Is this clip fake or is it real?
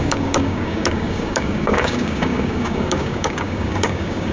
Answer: fake